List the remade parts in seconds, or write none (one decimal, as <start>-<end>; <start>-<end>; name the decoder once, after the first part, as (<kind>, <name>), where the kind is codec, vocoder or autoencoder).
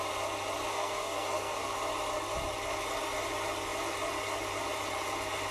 0.7-1.7 (codec, SNAC)